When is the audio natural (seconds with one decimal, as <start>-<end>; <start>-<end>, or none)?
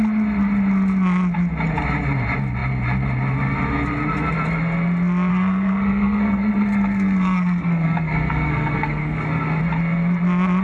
0.0-5.3; 9.6-10.6